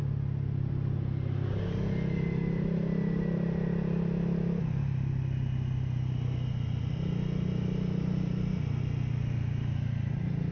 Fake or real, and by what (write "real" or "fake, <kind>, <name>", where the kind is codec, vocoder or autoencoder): real